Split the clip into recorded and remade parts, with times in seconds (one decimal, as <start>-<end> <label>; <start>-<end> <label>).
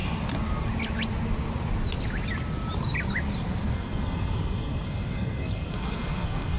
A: 0.0-3.7 recorded; 3.7-6.6 remade